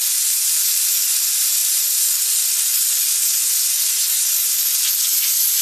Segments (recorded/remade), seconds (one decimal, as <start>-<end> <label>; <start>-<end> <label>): 0.0-5.6 recorded